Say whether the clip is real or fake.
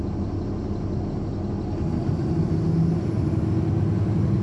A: real